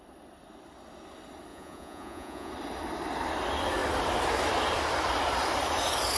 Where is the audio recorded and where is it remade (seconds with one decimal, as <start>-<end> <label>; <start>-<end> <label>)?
0.0-1.5 recorded; 1.5-2.5 remade; 2.5-6.2 recorded